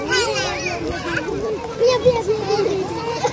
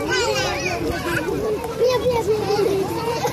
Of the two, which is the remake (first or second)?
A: second